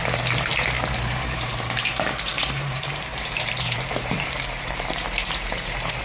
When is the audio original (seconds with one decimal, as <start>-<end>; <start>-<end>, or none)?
0.0-0.8